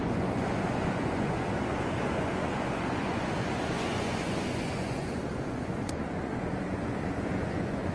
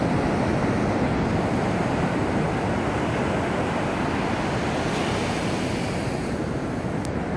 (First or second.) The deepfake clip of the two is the first